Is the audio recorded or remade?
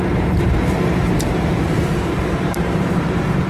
remade